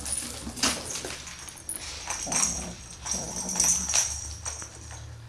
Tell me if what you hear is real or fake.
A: real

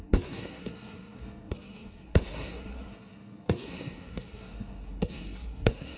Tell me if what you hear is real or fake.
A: fake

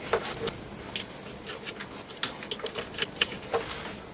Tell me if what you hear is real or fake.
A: real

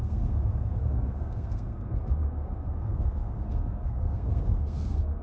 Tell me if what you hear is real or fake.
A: fake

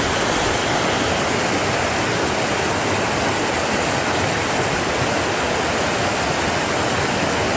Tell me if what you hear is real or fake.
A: real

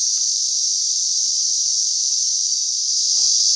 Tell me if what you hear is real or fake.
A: real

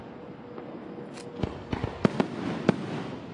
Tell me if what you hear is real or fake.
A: real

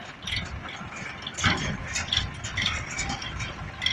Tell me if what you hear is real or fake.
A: real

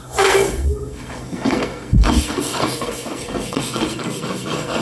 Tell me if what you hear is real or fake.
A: fake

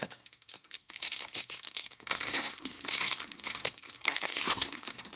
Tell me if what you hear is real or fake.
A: fake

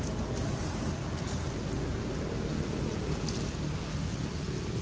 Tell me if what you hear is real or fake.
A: real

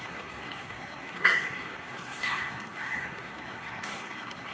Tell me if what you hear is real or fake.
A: fake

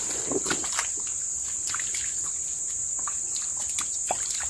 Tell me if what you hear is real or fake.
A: real